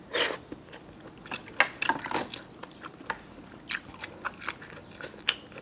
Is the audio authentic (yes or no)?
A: yes